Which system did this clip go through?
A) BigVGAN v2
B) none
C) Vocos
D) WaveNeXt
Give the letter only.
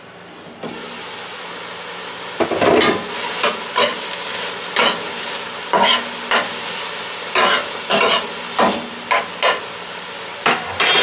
B